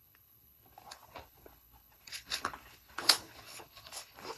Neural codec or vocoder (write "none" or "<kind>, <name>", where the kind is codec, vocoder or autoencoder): codec, HILCodec